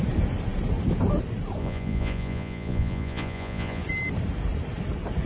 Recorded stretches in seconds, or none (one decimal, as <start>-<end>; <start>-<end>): 0.0-1.6; 3.8-5.3